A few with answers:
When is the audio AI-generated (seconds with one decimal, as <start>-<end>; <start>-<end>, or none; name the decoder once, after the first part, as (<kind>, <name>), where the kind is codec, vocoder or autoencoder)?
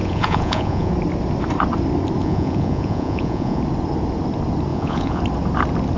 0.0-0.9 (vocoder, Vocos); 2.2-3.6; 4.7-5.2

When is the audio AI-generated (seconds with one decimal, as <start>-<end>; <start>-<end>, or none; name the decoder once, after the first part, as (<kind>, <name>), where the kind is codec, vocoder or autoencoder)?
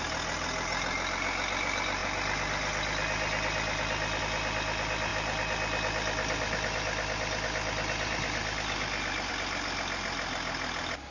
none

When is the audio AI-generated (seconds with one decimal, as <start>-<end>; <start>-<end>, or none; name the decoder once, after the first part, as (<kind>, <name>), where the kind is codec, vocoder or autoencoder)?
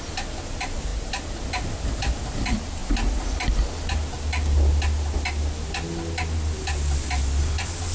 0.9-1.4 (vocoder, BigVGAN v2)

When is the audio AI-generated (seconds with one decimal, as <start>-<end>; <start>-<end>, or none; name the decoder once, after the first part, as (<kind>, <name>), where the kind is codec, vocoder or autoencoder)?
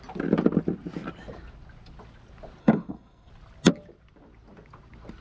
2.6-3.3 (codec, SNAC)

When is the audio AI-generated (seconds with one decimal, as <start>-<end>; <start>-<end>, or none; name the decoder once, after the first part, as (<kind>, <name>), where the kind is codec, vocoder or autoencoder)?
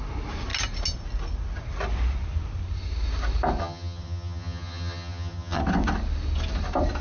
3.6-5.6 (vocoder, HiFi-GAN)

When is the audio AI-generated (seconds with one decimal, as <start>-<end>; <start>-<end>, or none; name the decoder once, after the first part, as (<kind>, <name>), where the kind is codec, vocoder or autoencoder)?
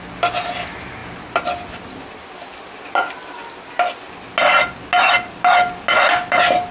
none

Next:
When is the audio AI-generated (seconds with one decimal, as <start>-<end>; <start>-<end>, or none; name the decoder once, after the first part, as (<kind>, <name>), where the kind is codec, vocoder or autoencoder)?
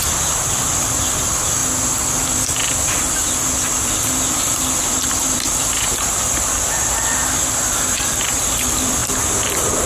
0.0-1.6 (vocoder, BigVGAN v2); 3.7-9.0; 9.5-9.9